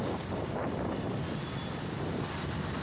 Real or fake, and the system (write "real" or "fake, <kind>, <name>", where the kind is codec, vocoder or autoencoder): real